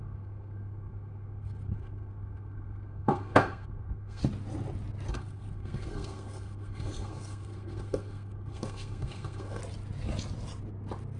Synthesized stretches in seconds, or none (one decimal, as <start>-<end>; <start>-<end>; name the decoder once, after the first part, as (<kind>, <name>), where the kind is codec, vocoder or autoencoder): 0.0-4.2 (codec, SNAC); 5.1-9.6